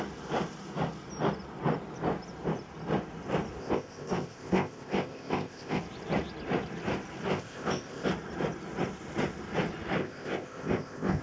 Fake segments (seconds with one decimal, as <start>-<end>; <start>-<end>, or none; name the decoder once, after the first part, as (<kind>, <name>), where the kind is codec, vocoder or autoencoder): 3.6-5.8 (codec, ZipCodec); 7.3-8.1; 10.0-11.2